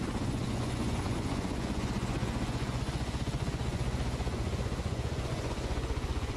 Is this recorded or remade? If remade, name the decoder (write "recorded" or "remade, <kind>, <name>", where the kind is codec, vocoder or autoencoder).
remade, vocoder, Vocos